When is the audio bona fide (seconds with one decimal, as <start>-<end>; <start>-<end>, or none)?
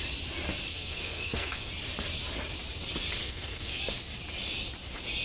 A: 0.0-0.7; 1.7-3.2; 3.8-5.2